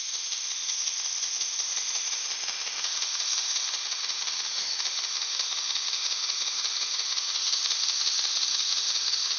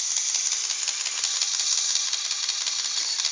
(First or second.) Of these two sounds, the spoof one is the first